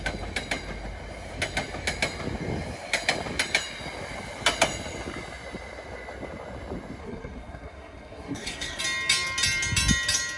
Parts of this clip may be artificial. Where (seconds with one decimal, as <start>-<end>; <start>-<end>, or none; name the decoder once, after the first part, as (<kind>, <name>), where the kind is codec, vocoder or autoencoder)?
7.0-8.8 (codec, SNAC)